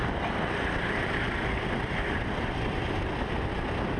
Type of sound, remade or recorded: recorded